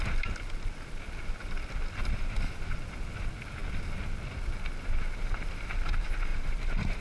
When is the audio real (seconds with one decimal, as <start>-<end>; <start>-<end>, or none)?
0.0-6.3